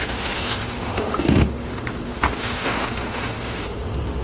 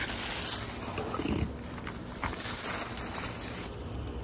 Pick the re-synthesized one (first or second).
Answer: first